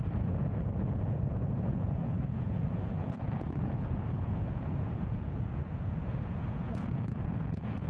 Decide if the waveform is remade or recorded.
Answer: remade